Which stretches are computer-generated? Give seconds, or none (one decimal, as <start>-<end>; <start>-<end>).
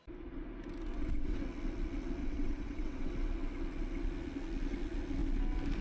0.9-1.4; 2.2-3.1